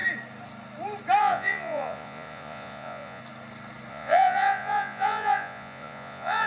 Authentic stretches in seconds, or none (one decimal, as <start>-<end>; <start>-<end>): 0.0-1.2; 3.2-3.9